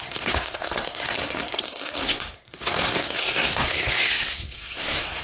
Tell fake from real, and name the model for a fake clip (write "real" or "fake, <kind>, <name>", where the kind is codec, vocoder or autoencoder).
fake, codec, SNAC